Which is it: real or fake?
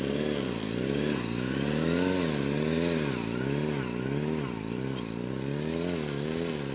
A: real